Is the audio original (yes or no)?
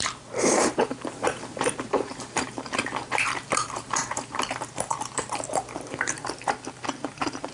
no